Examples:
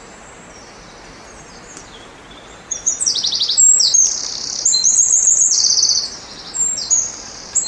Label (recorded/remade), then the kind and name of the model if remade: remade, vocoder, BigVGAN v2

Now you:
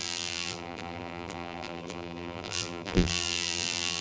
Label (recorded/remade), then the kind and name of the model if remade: remade, vocoder, BigVGAN v2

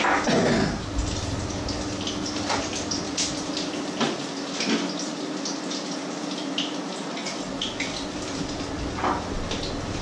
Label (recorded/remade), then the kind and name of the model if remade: recorded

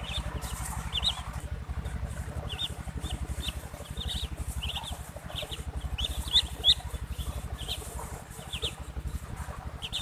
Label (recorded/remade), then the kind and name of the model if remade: remade, vocoder, BigVGAN v2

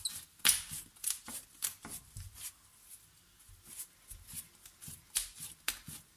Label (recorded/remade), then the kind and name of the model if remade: recorded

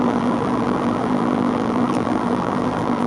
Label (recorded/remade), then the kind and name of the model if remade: remade, vocoder, BigVGAN v2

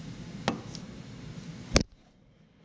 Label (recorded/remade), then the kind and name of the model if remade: recorded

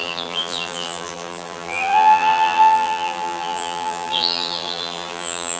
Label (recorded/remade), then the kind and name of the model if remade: remade, vocoder, BigVGAN v2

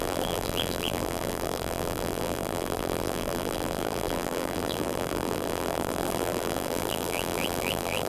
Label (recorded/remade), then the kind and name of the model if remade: remade, vocoder, BigVGAN v2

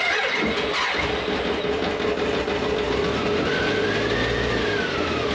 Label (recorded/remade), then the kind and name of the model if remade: recorded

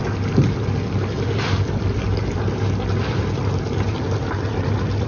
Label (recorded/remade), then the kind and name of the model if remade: remade, vocoder, BigVGAN v2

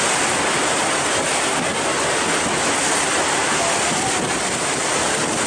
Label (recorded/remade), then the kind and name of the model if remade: remade, vocoder, BigVGAN v2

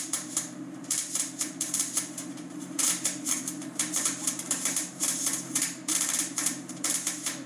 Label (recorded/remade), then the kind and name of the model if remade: remade, vocoder, BigVGAN v2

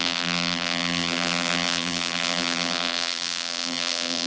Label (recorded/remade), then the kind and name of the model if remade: remade, vocoder, BigVGAN v2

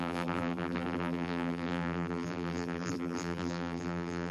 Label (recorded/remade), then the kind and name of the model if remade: remade, vocoder, BigVGAN v2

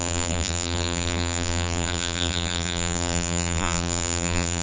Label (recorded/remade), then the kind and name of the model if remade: remade, vocoder, BigVGAN v2